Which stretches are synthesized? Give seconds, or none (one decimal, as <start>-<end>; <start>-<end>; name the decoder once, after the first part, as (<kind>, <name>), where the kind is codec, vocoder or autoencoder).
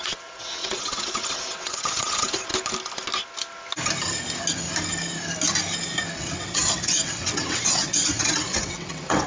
0.0-2.5 (vocoder, WaveNeXt); 6.2-9.3